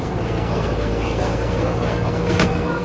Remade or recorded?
remade